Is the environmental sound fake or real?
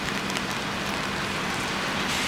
real